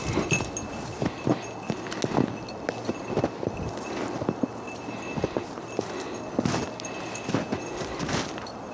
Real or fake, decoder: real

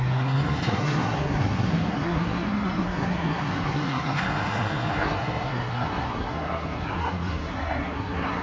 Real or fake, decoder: fake, codec, SNAC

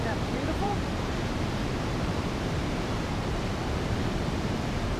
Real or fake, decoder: fake, vocoder, BigVGAN v2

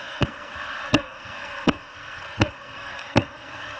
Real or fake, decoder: fake, codec, SNAC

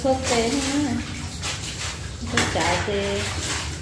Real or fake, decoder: real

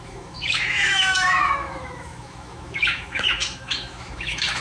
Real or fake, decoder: fake, autoencoder, DAC-VAE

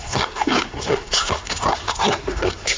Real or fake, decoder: fake, codec, SNAC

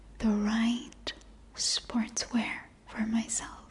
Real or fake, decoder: real